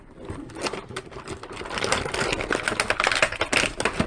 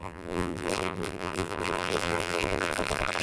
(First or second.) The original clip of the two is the first